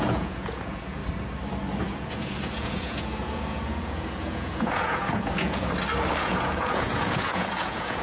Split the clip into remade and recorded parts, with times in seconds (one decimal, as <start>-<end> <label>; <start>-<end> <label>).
0.0-1.0 remade; 1.0-1.8 recorded; 1.8-5.6 remade; 5.6-6.2 recorded; 6.2-8.0 remade